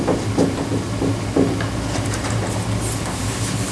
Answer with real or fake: real